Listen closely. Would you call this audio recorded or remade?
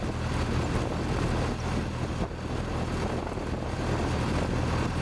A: recorded